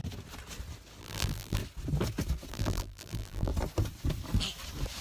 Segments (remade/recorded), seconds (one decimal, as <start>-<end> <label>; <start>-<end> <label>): 0.0-1.0 recorded; 1.0-1.6 remade; 1.6-2.5 recorded; 2.5-3.5 remade; 3.5-5.0 recorded

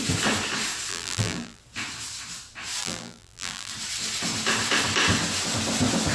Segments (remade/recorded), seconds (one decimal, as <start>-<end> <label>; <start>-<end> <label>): 0.0-0.9 recorded; 0.9-1.6 remade; 1.6-2.8 recorded; 2.8-3.7 remade; 3.7-6.1 recorded